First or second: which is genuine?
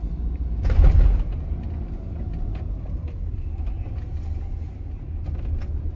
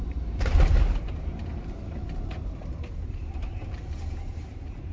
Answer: first